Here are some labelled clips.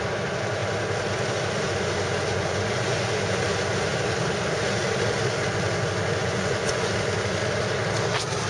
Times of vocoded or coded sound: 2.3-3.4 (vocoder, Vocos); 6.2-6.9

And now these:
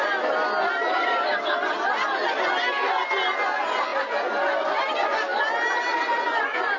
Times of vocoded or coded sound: none

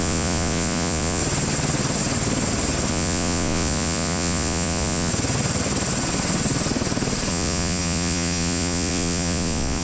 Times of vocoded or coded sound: 0.0-1.2 (vocoder, Vocos); 2.9-5.1; 7.3-9.8